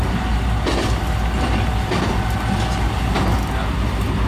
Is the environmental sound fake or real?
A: real